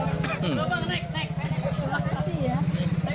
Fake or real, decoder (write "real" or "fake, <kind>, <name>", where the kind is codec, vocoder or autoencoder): real